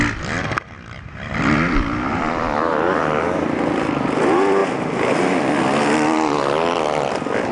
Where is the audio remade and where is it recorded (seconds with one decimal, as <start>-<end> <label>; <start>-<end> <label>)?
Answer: 0.0-7.5 recorded